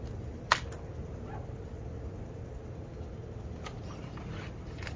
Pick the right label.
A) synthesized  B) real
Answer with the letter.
B